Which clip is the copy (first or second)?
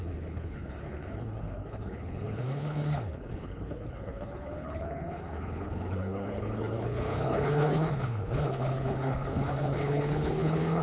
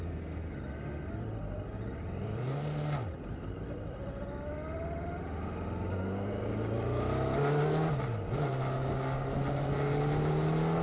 first